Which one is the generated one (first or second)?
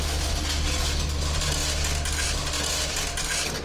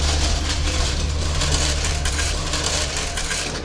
second